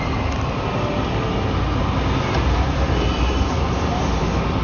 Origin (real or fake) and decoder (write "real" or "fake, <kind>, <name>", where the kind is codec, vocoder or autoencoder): real